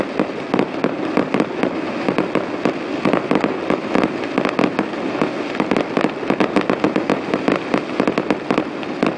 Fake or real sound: real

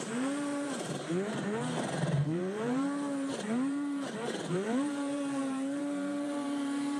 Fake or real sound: fake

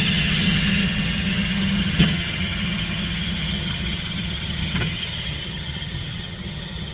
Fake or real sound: fake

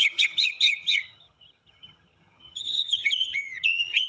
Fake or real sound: fake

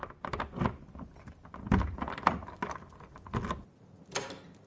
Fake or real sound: real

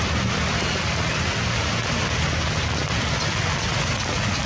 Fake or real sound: real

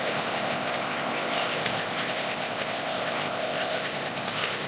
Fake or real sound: fake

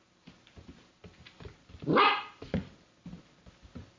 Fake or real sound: real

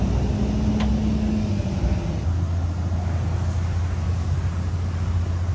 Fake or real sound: real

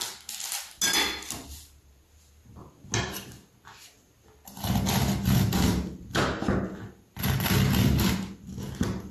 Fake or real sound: real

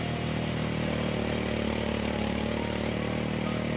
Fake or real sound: real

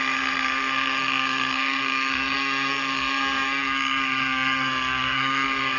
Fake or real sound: fake